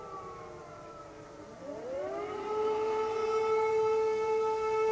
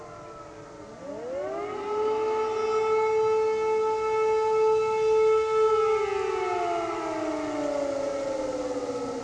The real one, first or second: second